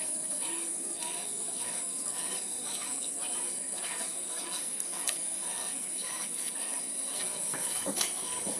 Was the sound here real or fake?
fake